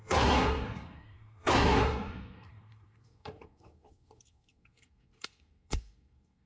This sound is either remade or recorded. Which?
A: remade